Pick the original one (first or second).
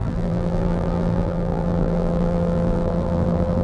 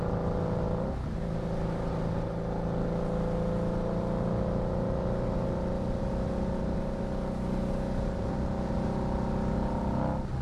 second